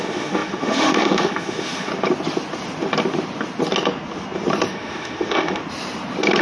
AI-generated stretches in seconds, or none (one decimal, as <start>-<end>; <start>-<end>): 0.0-1.9; 4.7-5.6